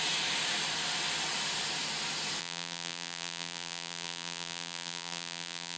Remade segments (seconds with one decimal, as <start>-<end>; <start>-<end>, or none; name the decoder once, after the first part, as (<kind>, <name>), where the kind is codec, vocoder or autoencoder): 2.4-5.8 (vocoder, BigVGAN v2)